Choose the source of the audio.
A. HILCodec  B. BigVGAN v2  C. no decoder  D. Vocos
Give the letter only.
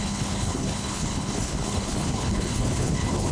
A